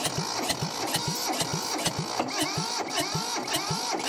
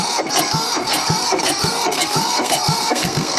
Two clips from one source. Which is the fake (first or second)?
second